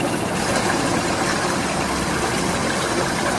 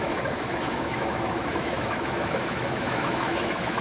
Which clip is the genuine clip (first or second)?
first